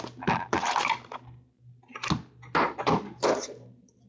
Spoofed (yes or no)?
no